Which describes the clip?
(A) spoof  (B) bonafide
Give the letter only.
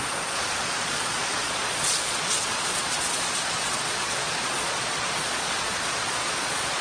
A